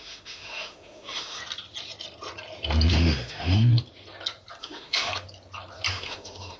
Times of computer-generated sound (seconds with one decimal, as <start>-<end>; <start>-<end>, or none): 0.0-1.4; 2.9-3.7; 4.6-5.1; 5.9-6.6